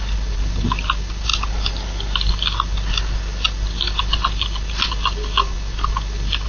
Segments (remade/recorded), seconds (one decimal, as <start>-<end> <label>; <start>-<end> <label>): 0.0-6.5 recorded